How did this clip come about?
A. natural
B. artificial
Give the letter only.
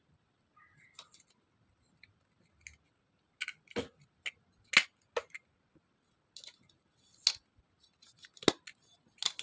A